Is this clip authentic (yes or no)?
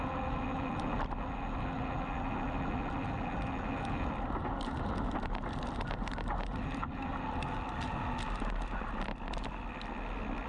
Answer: yes